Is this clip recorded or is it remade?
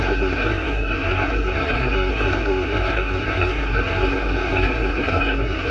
remade